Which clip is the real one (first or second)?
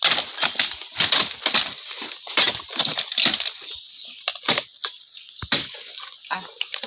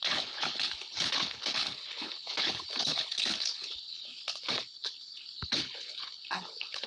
first